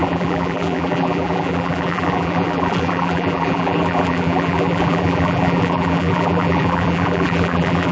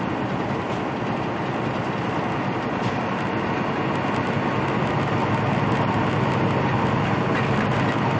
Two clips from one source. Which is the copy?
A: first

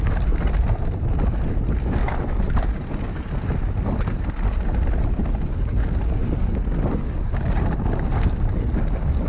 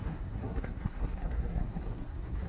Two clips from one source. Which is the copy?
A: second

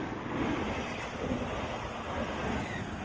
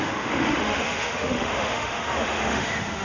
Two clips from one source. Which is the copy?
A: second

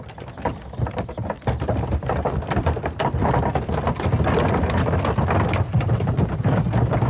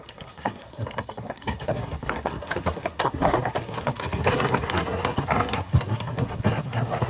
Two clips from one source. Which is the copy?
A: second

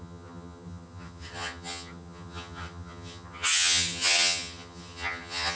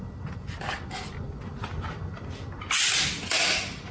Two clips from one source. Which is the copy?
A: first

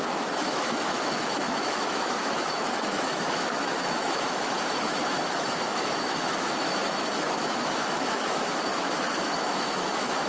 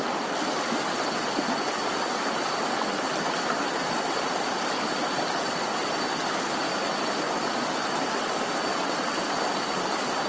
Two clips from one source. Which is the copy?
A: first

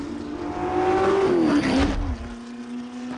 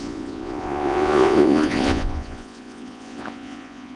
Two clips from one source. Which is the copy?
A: second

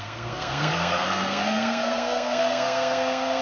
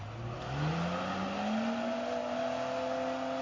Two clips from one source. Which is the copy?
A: first